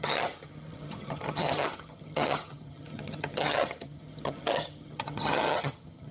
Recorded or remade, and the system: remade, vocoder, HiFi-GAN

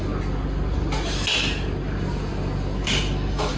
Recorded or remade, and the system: recorded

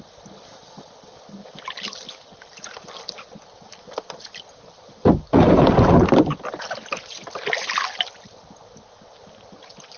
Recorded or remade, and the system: recorded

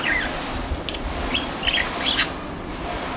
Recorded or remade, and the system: recorded